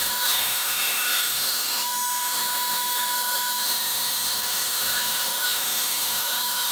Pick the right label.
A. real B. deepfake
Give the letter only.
B